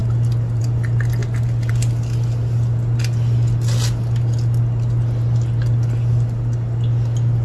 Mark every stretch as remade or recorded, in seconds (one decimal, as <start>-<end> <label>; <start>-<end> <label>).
0.0-7.4 recorded